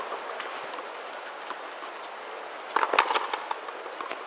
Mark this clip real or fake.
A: real